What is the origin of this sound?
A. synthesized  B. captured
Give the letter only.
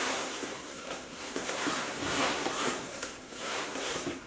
A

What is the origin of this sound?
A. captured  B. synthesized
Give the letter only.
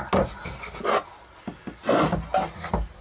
A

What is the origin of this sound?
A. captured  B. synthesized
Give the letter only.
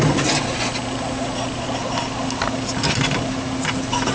A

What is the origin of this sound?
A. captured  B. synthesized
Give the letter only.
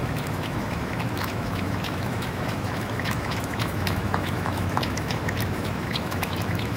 B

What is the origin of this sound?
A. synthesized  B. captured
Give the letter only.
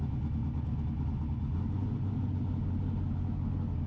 B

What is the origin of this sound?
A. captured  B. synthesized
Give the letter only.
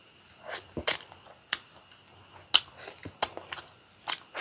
A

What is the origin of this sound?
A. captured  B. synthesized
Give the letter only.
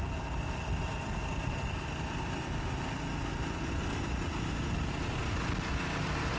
A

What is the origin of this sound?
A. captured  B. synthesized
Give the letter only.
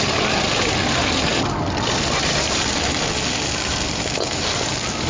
A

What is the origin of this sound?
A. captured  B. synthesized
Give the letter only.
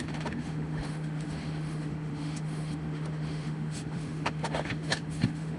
B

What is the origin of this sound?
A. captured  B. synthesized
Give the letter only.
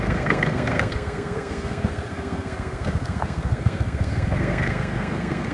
B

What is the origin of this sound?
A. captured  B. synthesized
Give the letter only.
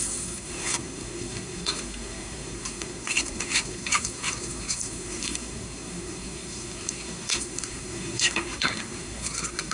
B